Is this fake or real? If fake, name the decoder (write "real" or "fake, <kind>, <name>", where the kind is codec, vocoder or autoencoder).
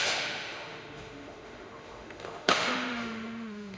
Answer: fake, autoencoder, DAC-VAE